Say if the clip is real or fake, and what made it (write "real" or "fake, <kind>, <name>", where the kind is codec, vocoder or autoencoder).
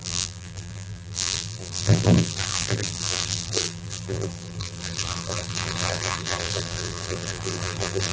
fake, vocoder, BigVGAN v2